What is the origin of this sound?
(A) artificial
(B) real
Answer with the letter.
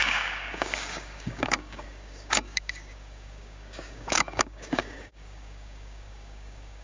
A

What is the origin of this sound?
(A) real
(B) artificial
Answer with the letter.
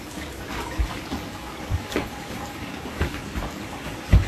B